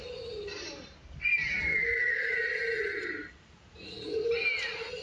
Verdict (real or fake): real